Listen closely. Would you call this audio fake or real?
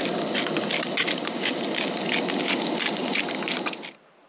real